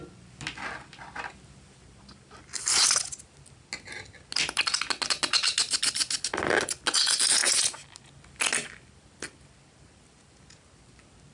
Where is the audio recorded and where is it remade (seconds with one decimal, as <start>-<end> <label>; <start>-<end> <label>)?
0.0-11.3 recorded